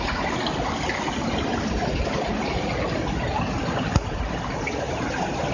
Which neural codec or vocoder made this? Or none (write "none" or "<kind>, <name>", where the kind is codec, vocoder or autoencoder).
none